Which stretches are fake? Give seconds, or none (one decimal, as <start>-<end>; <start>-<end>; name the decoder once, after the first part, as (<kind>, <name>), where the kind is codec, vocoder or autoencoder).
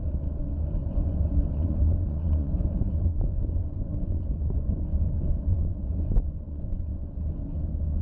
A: 0.8-5.0 (vocoder, Vocos); 5.5-7.1